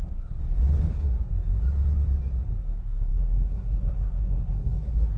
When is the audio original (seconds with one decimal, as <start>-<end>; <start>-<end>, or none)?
0.4-0.9; 1.3-2.5